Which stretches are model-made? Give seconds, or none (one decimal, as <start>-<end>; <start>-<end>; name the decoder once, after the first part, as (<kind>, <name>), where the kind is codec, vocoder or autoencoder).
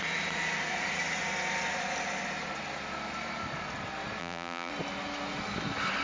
4.2-4.7 (vocoder, BigVGAN v2)